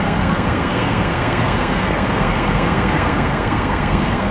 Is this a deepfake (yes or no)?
yes